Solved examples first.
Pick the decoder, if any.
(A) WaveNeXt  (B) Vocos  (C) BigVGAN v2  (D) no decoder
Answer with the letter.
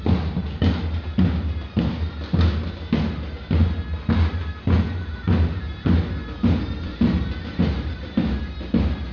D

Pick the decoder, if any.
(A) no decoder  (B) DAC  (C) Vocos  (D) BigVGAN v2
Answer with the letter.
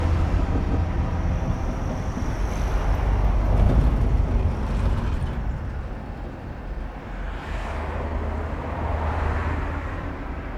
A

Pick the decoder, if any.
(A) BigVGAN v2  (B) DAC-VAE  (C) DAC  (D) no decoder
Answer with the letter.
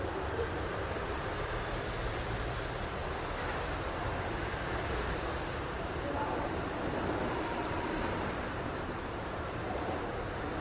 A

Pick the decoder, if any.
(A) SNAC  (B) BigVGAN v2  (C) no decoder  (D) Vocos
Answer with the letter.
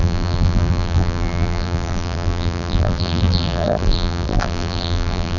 B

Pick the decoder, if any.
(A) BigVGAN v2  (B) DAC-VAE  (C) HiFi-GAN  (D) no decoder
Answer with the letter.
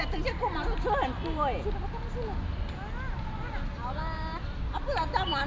D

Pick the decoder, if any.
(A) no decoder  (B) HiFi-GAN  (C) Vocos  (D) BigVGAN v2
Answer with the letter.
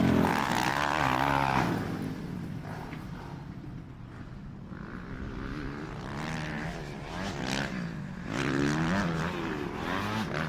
A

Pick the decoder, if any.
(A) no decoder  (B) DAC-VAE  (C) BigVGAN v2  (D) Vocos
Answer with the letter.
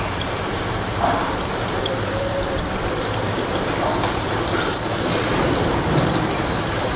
C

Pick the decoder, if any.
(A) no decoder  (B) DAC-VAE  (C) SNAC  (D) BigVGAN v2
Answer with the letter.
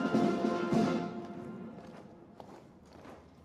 D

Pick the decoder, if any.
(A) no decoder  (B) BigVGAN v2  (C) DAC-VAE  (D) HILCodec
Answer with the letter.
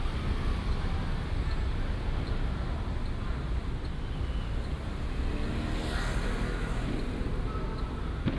A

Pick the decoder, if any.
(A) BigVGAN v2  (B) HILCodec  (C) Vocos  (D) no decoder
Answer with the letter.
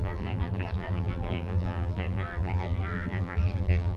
A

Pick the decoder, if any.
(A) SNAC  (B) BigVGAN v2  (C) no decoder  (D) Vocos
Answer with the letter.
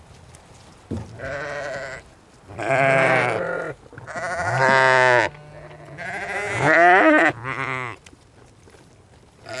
C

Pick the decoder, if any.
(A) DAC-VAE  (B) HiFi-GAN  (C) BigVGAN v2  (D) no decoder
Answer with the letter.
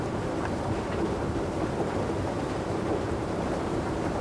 C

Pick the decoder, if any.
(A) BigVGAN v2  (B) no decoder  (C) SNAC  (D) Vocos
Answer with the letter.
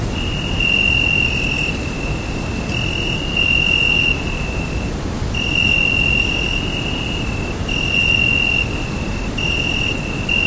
B